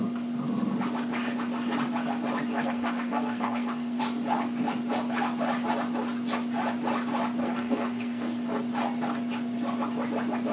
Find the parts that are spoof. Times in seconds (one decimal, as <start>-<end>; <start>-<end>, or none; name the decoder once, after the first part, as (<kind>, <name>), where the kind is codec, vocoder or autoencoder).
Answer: 2.5-4.0 (codec, SNAC); 7.4-8.6

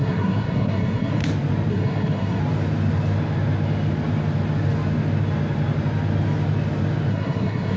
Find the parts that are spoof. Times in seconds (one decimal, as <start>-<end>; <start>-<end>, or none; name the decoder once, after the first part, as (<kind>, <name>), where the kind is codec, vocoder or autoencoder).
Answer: 0.0-1.2 (codec, SNAC); 1.7-2.4; 7.1-7.8

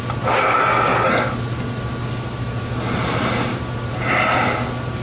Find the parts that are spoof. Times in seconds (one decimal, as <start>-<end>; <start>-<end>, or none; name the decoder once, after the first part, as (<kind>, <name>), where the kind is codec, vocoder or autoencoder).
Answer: none

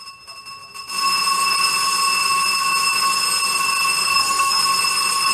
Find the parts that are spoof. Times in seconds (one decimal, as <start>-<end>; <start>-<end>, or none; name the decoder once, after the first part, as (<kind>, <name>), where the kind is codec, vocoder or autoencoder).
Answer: 4.0-4.6 (codec, SNAC)

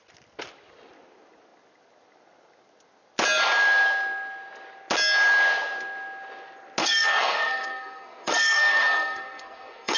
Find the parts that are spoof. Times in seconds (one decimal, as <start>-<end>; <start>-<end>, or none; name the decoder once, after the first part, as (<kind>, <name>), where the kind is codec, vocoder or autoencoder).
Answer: 6.8-10.0 (codec, SNAC)

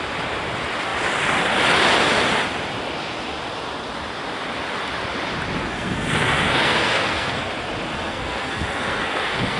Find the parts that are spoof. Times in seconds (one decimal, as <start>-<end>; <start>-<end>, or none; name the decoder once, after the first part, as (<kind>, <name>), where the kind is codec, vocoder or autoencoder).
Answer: 5.6-7.5 (codec, SNAC); 7.9-9.6

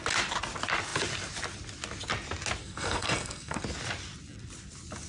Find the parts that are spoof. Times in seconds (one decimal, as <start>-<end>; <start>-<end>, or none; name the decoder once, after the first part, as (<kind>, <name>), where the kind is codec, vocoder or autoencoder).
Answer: 2.6-3.6 (codec, SNAC)